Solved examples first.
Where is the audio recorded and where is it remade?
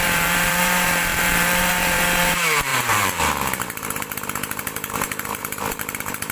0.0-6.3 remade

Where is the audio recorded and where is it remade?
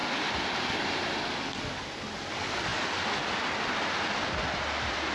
0.0-5.1 recorded